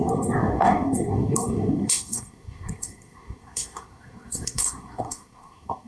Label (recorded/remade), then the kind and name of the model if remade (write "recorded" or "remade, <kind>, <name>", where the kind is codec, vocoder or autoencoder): remade, codec, SNAC